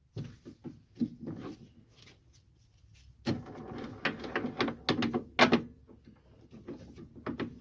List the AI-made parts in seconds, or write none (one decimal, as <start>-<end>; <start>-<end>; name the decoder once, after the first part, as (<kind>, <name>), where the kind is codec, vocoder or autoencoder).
none